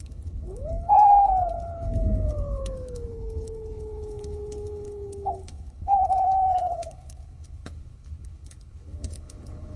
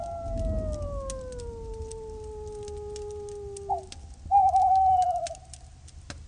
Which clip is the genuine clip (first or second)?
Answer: second